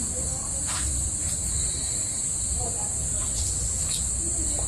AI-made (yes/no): no